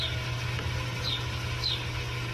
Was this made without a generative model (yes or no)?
yes